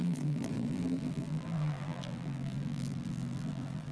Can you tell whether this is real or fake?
fake